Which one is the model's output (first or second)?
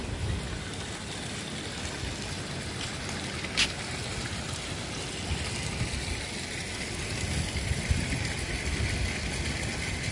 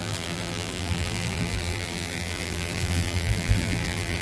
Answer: second